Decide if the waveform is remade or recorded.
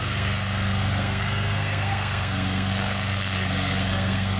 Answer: remade